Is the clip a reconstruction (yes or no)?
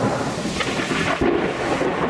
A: no